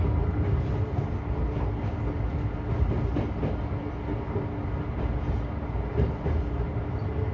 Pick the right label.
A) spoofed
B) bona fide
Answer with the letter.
B